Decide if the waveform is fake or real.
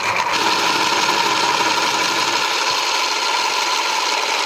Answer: real